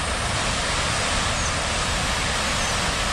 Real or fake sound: real